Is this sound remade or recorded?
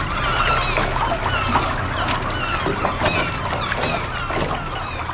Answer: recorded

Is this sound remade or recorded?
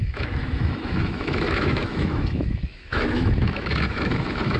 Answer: remade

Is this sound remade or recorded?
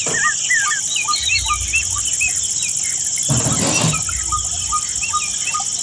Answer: recorded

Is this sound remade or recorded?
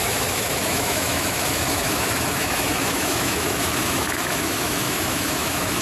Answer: remade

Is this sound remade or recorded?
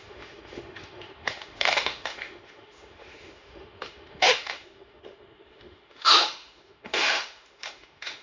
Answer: remade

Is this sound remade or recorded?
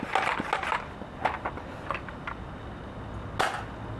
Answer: recorded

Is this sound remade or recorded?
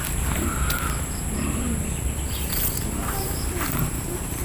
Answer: recorded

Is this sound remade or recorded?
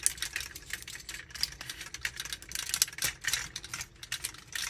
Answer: recorded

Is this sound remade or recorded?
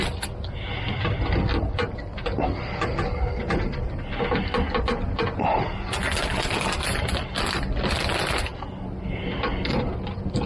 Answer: recorded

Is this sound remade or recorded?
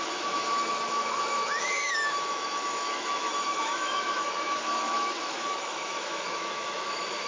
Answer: remade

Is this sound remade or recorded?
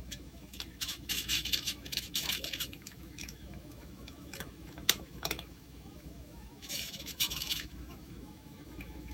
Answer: remade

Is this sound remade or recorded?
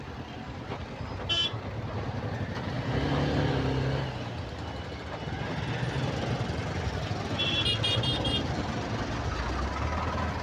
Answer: recorded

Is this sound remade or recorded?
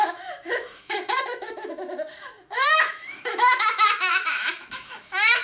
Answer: remade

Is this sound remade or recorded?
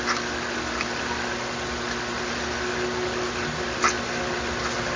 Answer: recorded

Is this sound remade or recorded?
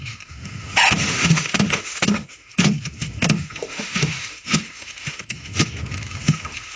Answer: remade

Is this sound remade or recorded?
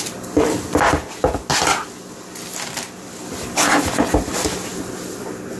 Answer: recorded